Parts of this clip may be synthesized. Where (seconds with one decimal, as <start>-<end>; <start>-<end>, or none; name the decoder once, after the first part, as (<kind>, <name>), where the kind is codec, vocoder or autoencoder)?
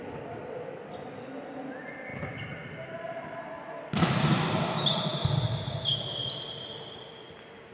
none